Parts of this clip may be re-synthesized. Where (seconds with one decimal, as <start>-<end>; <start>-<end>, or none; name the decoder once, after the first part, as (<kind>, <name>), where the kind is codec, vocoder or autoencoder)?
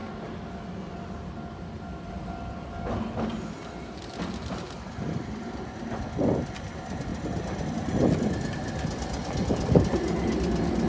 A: none